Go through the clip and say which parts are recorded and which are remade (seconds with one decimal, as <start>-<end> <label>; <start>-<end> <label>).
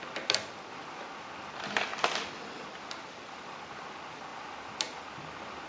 0.0-5.7 recorded